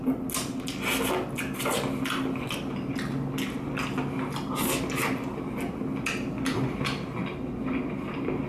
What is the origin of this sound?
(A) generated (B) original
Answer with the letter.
B